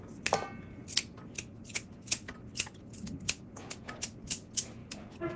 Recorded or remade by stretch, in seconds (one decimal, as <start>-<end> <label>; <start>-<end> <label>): 0.0-5.4 recorded